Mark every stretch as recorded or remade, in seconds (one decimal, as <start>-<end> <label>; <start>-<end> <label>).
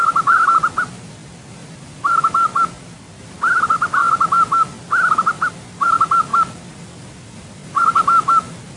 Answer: 0.0-1.6 recorded; 1.6-3.3 remade; 3.3-6.3 recorded; 6.3-6.9 remade; 6.9-8.8 recorded